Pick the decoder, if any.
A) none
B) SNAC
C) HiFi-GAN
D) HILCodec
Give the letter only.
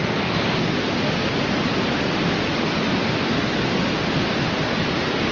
A